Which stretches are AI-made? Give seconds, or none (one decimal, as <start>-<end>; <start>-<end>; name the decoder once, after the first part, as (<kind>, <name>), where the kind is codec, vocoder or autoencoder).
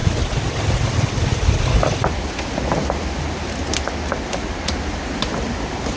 none